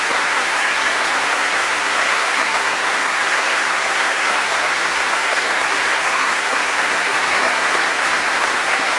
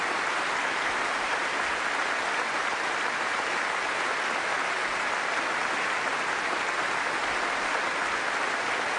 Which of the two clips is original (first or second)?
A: second